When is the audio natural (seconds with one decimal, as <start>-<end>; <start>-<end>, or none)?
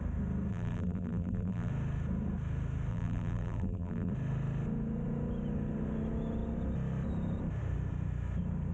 0.0-0.5; 1.7-2.9; 4.1-8.7